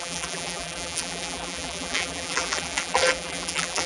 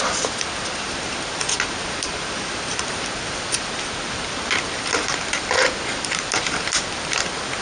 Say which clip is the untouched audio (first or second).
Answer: second